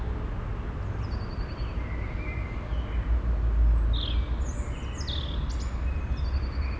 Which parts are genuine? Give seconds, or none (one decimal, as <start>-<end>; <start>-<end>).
0.0-6.8